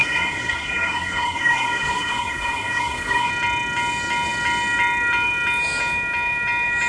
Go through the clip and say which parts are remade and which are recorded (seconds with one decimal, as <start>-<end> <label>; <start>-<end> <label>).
0.0-3.3 remade; 3.3-6.9 recorded